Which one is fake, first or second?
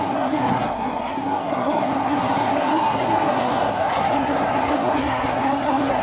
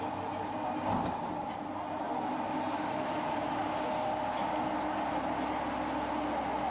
first